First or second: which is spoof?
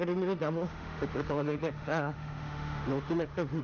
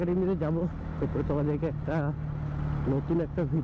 first